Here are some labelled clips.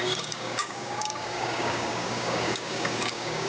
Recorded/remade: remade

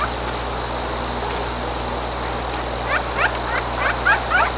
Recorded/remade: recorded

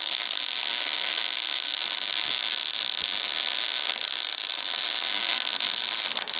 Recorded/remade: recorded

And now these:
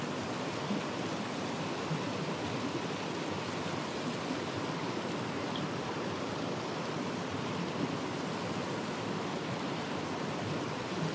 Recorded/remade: recorded